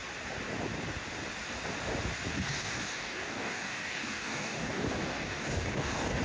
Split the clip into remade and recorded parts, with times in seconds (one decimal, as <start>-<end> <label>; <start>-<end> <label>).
0.0-2.3 recorded; 2.3-6.2 remade

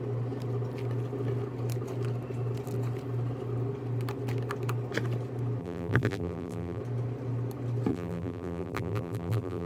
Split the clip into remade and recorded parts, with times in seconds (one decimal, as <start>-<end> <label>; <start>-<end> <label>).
0.0-5.6 recorded; 5.6-6.8 remade; 6.8-7.9 recorded; 7.9-9.7 remade

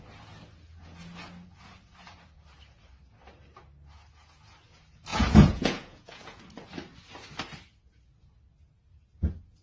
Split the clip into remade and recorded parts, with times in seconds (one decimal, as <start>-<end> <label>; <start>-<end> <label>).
0.0-5.1 recorded; 5.1-6.4 remade; 6.4-9.6 recorded

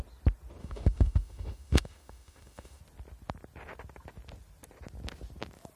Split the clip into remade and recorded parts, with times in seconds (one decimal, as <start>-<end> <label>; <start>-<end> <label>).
0.0-0.6 recorded; 0.6-2.8 remade; 2.8-5.8 recorded

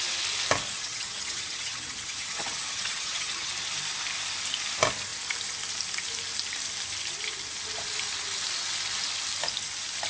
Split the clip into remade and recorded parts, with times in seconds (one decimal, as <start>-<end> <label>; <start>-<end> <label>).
0.0-0.7 recorded; 0.7-3.5 remade; 3.5-10.1 recorded

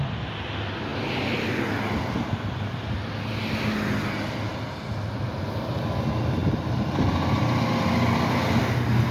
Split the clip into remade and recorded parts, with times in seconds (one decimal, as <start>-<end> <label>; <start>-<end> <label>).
0.0-9.1 recorded

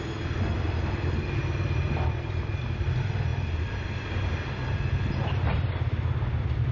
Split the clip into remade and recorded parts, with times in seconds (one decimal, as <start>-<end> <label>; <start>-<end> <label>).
0.0-6.7 recorded